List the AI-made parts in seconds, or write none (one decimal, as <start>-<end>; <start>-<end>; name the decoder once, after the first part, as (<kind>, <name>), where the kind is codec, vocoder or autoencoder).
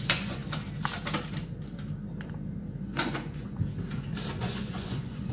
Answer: 0.0-0.4 (vocoder, Vocos); 2.8-3.6; 4.4-5.3